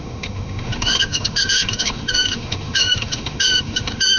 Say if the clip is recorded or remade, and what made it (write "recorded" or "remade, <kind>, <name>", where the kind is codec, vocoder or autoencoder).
remade, autoencoder, DAC-VAE